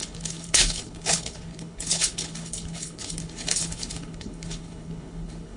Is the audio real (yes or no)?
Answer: no